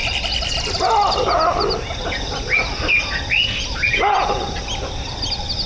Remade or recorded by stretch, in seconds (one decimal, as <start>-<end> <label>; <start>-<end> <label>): 0.0-5.7 recorded